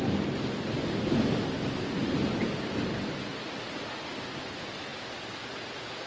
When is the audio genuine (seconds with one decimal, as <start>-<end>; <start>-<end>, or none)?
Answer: 0.0-6.1